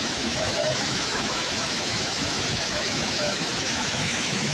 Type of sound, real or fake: fake